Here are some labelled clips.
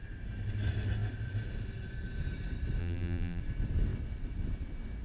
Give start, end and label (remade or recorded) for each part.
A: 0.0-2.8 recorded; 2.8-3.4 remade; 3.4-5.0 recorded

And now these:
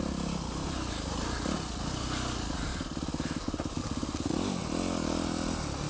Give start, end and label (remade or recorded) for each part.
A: 0.0-2.7 recorded; 2.7-3.8 remade; 3.8-5.9 recorded

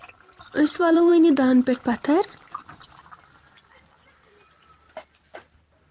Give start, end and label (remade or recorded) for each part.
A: 0.0-1.1 remade; 1.1-4.1 recorded; 4.1-5.9 remade

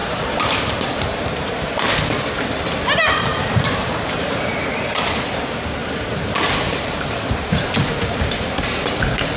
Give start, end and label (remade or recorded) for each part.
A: 0.0-1.9 remade; 1.9-3.3 recorded; 3.3-4.5 remade; 4.5-9.4 recorded

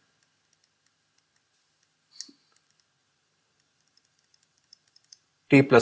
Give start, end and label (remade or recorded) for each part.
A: 0.0-3.0 recorded; 3.0-5.8 remade